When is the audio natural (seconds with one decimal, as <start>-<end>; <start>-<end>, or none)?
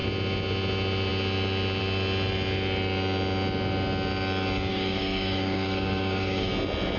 0.0-4.7; 6.5-7.0